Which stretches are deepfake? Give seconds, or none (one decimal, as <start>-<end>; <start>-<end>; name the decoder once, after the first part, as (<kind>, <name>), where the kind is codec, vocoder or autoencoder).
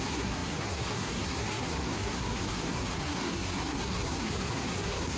0.0-5.2 (codec, SNAC)